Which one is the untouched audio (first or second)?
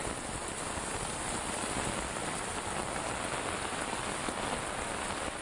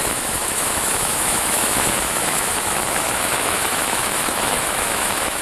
first